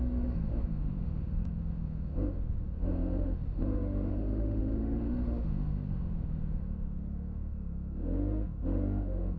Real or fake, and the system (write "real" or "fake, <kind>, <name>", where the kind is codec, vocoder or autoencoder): fake, autoencoder, DAC-VAE